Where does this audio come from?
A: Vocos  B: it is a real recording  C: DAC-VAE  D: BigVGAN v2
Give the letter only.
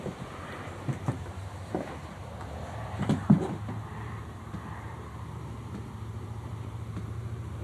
D